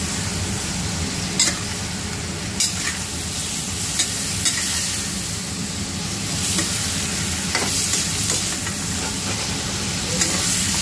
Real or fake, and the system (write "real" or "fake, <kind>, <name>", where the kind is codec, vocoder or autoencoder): real